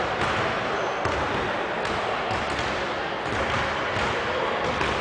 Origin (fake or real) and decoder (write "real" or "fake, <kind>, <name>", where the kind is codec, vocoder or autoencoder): real